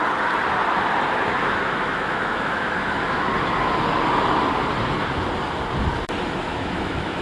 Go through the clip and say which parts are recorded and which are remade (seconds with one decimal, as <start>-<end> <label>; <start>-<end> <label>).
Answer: 0.0-1.4 recorded; 1.4-3.3 remade; 3.3-6.5 recorded; 6.5-7.2 remade